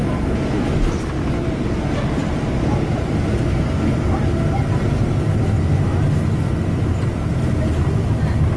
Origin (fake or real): real